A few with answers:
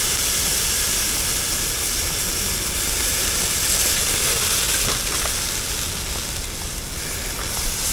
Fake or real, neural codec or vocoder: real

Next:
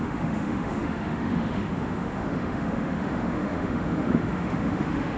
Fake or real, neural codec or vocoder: fake, autoencoder, DAC-VAE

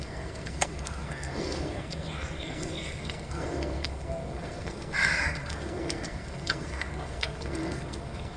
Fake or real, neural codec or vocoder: fake, codec, SNAC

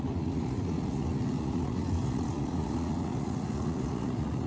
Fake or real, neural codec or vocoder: fake, vocoder, Vocos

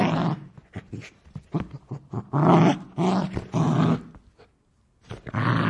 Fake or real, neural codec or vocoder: real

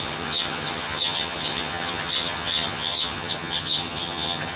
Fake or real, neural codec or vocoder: fake, vocoder, HiFi-GAN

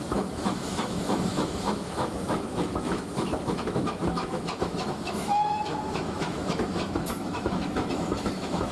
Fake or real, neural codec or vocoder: fake, autoencoder, DAC-VAE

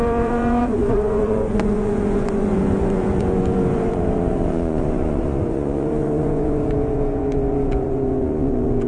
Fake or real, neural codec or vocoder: fake, vocoder, Vocos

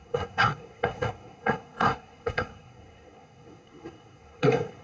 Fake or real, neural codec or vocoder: fake, codec, SNAC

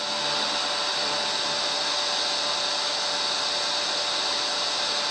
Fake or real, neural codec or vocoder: real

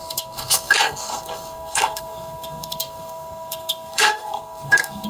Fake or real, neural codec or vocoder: fake, codec, SNAC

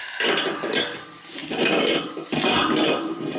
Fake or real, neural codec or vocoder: real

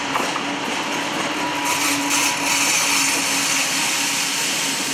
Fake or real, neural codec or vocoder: real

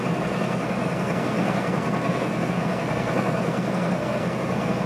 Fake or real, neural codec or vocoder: fake, codec, SNAC